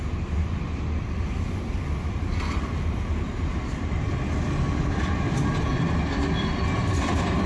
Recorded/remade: recorded